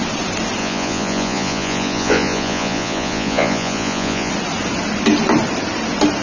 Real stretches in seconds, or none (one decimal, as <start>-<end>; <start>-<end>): 0.0-0.6; 4.3-6.2